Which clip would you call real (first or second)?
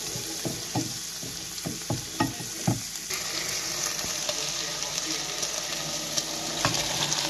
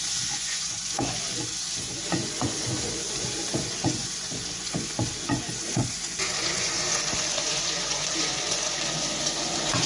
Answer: first